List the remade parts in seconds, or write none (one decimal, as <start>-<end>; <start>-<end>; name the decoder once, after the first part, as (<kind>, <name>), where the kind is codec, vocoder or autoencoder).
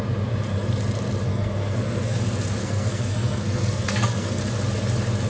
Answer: 1.3-2.2 (codec, SNAC); 2.6-4.4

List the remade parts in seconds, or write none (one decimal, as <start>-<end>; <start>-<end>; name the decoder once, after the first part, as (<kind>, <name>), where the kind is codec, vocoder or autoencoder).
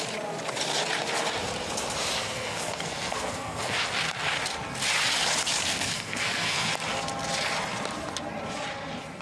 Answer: 2.2-3.8 (codec, SNAC); 5.6-6.7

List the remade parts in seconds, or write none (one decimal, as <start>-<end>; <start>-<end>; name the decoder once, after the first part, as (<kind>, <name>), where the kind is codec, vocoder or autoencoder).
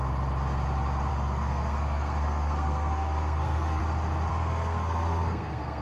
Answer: 1.1-3.8 (codec, SNAC); 4.3-5.8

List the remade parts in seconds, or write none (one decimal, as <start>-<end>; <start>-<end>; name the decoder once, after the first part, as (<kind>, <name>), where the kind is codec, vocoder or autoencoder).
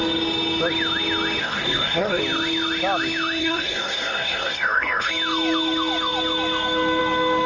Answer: 1.4-2.2 (codec, SNAC); 3.4-5.1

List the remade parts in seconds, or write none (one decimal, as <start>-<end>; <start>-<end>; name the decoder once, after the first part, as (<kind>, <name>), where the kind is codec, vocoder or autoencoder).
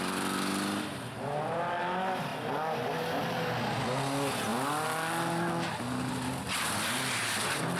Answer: none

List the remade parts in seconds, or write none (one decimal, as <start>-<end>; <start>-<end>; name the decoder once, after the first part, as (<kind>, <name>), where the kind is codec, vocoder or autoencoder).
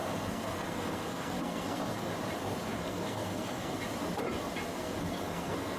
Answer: 0.0-2.1 (codec, SNAC); 2.7-3.8; 4.7-5.8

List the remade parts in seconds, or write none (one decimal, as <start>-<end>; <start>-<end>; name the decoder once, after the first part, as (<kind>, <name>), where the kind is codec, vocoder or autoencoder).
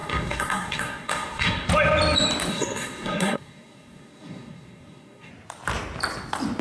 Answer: 0.0-1.7 (codec, SNAC); 2.5-5.3